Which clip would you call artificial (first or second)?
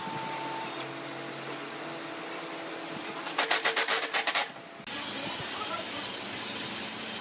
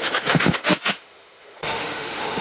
second